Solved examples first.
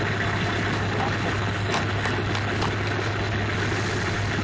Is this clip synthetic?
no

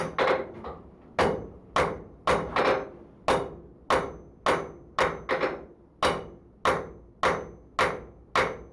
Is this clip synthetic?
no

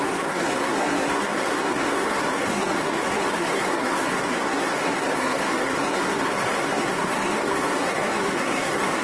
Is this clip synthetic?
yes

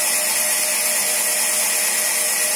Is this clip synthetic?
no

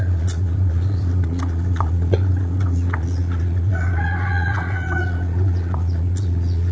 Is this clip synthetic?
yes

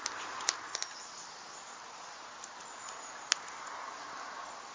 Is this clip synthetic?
no